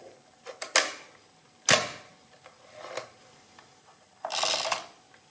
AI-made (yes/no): no